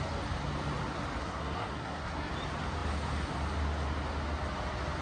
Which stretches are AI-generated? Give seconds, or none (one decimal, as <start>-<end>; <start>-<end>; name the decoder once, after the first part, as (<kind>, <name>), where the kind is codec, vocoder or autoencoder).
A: 1.2-2.3 (codec, SNAC)